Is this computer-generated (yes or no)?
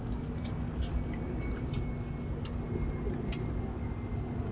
no